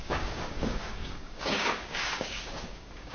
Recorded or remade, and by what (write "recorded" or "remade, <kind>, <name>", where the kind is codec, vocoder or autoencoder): remade, codec, DAC